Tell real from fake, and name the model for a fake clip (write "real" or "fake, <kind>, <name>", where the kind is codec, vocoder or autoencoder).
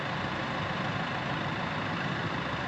real